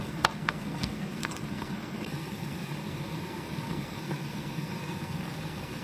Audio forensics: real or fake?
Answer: fake